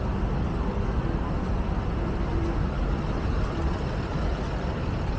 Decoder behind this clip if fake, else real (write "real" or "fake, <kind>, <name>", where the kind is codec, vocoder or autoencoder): real